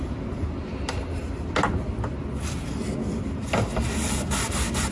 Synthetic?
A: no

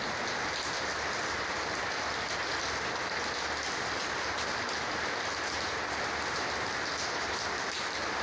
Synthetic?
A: no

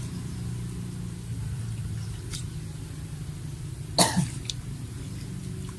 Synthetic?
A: no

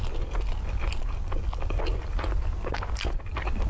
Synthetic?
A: no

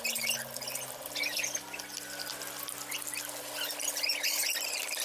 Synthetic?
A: no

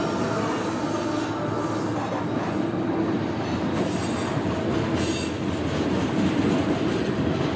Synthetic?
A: no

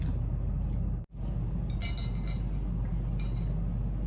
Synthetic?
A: no